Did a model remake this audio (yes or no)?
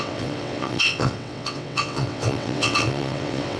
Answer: yes